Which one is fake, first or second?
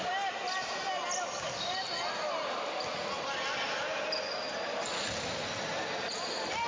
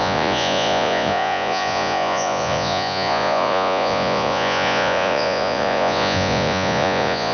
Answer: second